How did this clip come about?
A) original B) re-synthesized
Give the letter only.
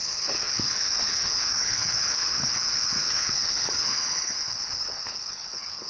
B